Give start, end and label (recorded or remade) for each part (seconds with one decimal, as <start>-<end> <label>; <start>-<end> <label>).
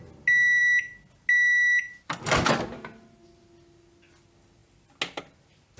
0.0-5.8 recorded